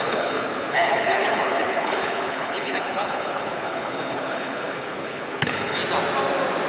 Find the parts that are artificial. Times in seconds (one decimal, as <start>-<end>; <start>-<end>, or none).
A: 0.0-5.8